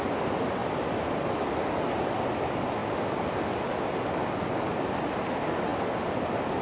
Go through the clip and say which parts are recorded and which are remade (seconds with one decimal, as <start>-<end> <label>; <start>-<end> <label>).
0.0-6.6 recorded